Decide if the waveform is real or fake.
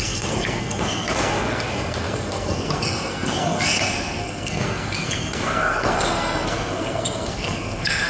fake